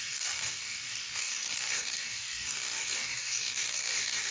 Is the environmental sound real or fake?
fake